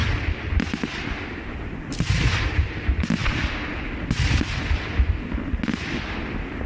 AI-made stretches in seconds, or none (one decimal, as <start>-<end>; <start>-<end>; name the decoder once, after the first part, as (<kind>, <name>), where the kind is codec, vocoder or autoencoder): 0.0-1.3 (vocoder, BigVGAN v2)